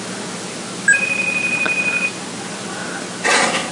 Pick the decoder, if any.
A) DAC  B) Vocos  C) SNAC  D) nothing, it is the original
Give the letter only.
D